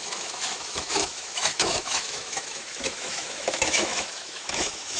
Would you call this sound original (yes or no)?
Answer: no